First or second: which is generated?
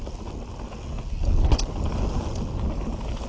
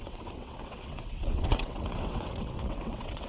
second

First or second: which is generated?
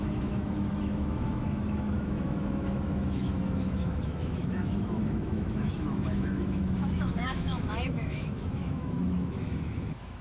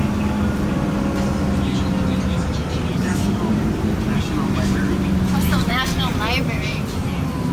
first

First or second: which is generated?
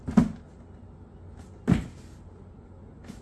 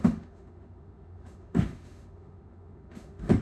second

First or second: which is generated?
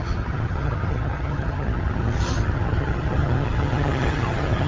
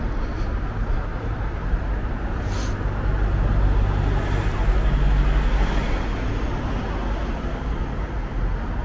first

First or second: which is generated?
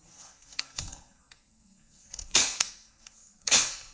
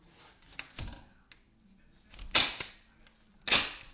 first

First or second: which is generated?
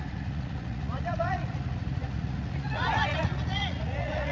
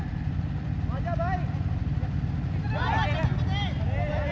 first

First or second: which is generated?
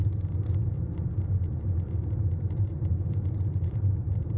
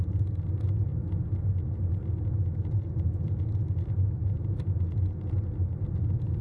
first